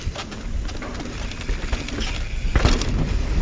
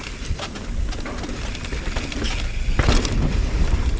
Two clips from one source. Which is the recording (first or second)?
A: first